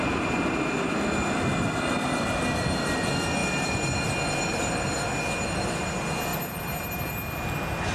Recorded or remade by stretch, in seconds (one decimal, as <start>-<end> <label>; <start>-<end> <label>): 0.0-6.3 recorded; 6.3-7.1 remade; 7.1-7.9 recorded